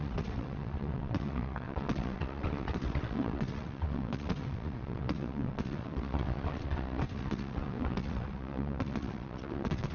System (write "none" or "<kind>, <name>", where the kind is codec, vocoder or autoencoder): vocoder, WaveNeXt